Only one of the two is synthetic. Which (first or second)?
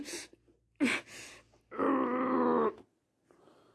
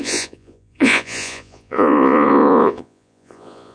second